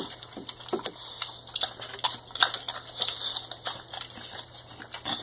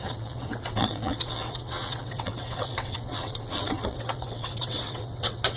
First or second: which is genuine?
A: first